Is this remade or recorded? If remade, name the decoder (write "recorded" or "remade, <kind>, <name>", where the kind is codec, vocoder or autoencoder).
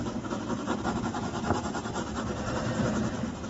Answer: recorded